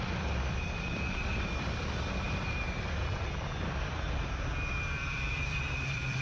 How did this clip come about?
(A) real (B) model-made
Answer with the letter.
B